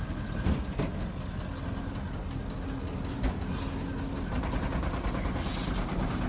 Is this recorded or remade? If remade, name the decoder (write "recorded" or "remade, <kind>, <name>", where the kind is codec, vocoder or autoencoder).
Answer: recorded